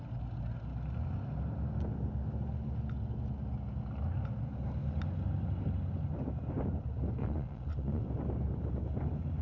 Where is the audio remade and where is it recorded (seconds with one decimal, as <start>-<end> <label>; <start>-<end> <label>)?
0.0-7.2 recorded; 7.2-8.0 remade; 8.0-9.4 recorded